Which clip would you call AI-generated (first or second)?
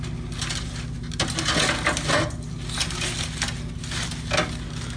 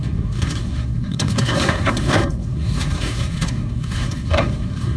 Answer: second